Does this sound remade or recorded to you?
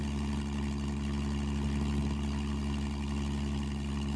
recorded